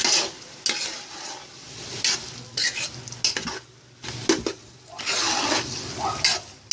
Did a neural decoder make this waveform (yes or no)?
no